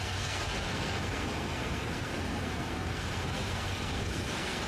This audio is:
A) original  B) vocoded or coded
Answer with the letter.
B